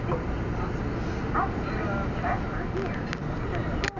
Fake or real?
real